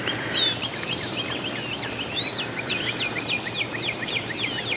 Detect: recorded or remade remade